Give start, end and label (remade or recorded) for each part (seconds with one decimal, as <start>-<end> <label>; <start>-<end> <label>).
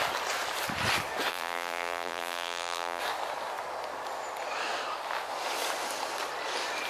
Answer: 0.0-1.3 recorded; 1.3-3.0 remade; 3.0-6.9 recorded